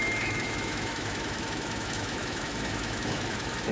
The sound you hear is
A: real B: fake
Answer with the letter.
B